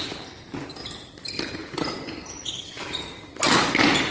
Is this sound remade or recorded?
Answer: recorded